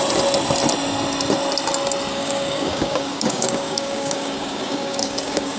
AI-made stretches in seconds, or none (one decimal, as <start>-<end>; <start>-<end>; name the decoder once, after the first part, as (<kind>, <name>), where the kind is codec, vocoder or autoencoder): 2.1-5.6 (codec, DAC)